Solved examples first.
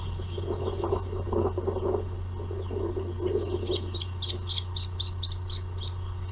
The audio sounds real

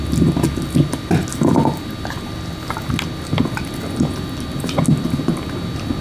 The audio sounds real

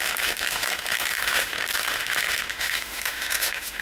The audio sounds fake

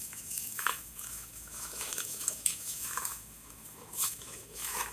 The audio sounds fake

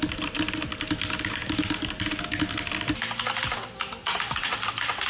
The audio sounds real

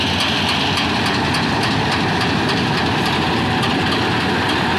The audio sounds real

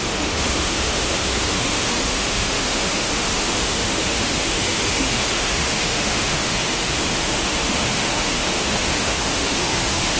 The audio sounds fake